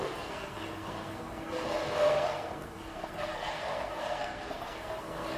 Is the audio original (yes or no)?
no